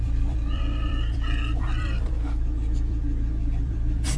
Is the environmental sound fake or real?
fake